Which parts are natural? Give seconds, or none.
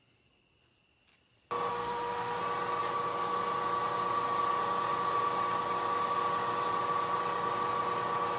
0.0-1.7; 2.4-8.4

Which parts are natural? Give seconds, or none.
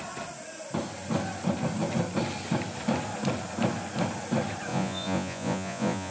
0.0-4.7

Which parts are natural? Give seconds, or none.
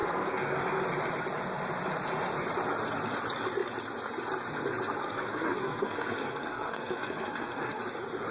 0.8-5.0; 7.8-8.3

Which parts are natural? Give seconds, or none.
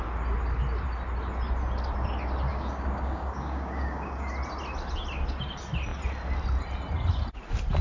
0.0-2.5; 4.3-7.8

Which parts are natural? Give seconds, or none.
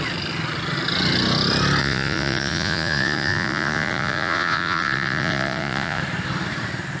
0.0-1.8; 6.0-7.0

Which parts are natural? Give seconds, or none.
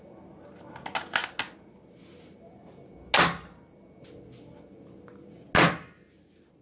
0.0-6.6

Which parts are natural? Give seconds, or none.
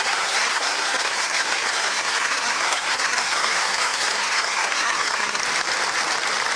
5.4-6.6